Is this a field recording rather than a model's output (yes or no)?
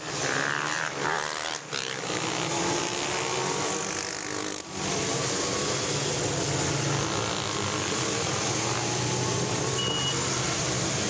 yes